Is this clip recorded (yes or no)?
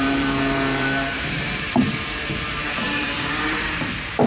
no